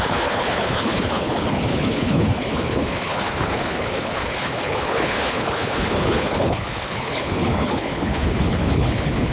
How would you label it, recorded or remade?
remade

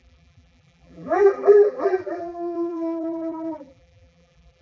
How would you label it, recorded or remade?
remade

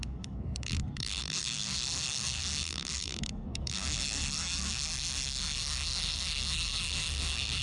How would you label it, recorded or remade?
remade